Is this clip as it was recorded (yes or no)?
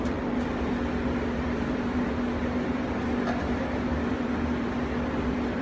no